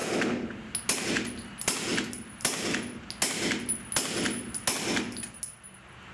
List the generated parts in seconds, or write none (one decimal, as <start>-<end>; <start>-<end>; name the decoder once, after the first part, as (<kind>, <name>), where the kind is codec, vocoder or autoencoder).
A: none